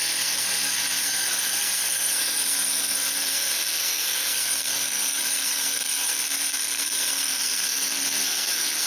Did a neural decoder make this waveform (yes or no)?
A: yes